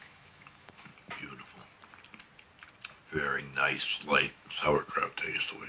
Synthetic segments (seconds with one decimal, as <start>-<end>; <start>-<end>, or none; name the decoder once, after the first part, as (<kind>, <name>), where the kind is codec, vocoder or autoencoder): 0.0-0.9 (autoencoder, DAC-VAE); 3.4-5.7